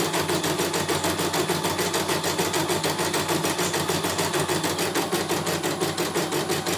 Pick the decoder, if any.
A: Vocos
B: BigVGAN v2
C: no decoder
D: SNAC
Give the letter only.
C